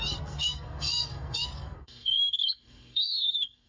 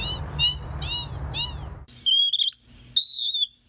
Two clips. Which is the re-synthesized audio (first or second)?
first